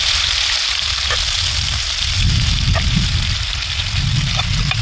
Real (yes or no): yes